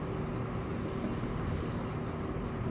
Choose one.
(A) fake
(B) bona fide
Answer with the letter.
B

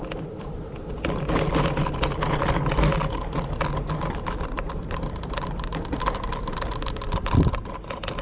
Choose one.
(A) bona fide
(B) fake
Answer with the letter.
A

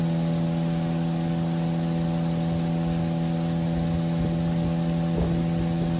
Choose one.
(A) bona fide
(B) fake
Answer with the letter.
A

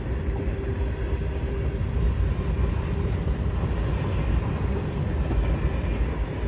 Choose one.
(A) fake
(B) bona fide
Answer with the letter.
B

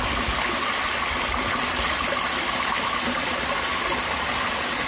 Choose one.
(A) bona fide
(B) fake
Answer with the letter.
A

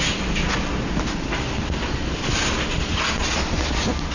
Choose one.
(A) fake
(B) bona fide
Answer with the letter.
B